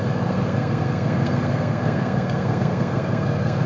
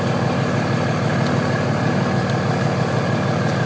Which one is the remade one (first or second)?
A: first